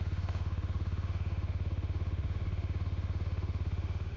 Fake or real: fake